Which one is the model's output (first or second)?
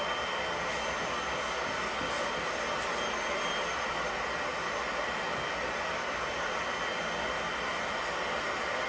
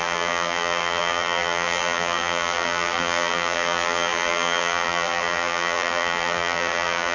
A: second